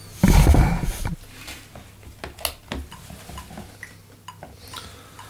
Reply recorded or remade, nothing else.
recorded